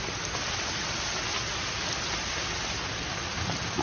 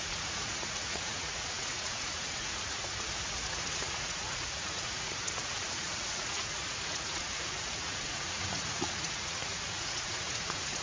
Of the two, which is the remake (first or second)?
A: second